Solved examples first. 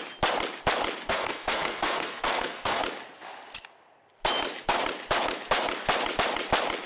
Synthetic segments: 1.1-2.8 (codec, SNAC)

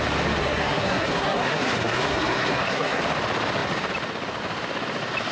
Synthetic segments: 0.4-3.0 (codec, SNAC)

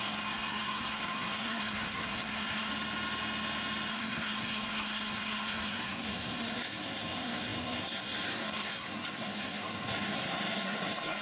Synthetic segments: 0.0-2.7 (codec, SNAC); 3.9-11.2

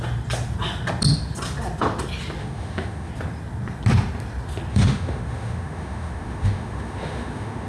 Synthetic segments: 2.4-3.1 (autoencoder, DAC-VAE); 4.7-7.7

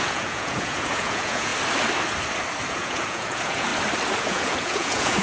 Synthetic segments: 0.0-1.5 (vocoder, Vocos); 2.7-3.7; 4.2-5.2